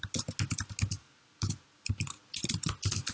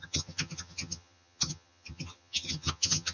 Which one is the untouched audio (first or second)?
first